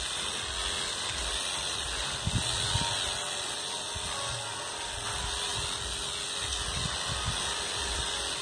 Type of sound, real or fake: real